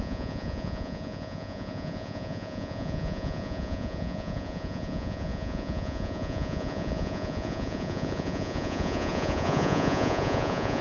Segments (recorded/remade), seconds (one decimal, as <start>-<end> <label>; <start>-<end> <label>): 0.0-10.8 remade